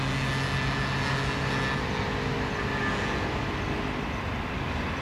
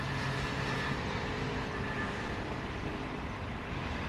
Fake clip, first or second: second